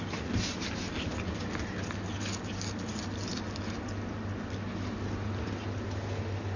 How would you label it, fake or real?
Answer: real